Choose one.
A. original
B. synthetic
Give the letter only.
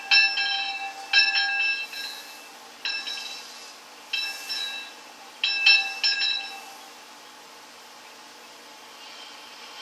A